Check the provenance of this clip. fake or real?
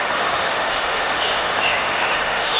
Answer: fake